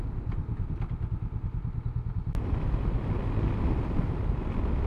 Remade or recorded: recorded